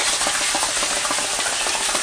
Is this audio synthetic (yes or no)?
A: no